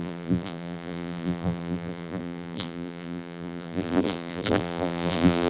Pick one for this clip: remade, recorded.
remade